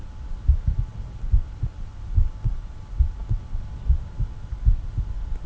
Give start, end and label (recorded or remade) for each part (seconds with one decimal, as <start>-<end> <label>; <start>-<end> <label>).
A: 0.0-5.5 recorded